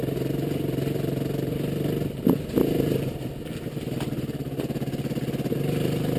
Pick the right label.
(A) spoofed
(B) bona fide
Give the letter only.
B